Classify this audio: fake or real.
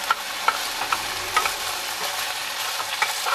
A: real